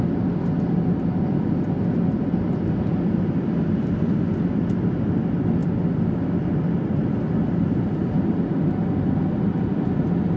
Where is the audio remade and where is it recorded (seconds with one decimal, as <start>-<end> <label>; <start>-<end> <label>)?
0.0-10.4 recorded